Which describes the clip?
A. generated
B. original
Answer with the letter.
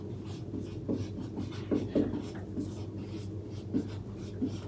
B